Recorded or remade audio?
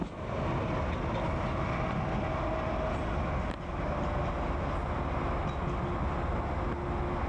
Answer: recorded